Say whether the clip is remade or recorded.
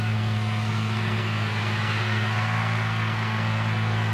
remade